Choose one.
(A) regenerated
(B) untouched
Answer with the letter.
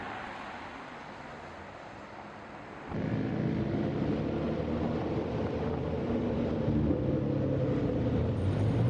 B